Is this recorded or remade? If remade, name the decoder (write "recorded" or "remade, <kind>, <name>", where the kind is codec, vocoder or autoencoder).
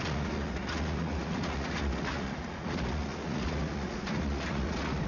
remade, vocoder, Vocos